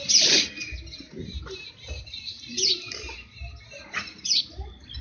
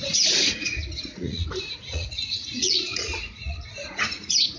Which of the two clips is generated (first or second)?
second